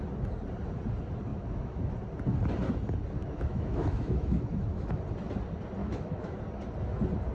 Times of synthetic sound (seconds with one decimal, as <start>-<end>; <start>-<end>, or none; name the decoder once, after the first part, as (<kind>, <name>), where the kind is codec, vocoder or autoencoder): 1.3-1.9 (autoencoder, DAC-VAE); 3.2-5.0; 5.8-6.4